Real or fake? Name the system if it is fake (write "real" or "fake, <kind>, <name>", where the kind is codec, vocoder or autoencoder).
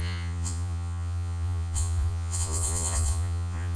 fake, vocoder, Vocos